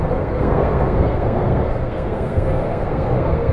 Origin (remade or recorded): remade